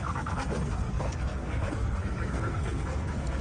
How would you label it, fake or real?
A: fake